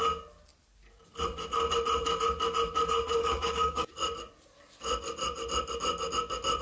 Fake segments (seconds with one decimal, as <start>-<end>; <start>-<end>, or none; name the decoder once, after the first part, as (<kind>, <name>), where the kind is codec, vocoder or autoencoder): 3.2-3.9 (codec, DAC)